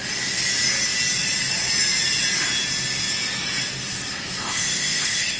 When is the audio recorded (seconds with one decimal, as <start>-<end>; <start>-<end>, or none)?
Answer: 0.0-4.4